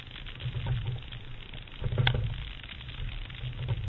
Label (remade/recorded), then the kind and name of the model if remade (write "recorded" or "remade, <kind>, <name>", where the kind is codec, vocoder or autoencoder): recorded